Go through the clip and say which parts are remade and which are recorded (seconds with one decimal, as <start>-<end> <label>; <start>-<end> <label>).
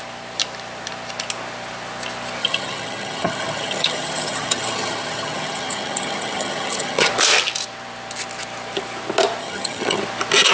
0.0-2.4 recorded; 2.4-7.1 remade; 7.1-9.4 recorded; 9.4-10.0 remade; 10.0-10.5 recorded